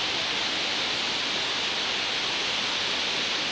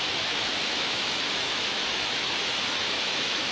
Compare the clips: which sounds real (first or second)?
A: first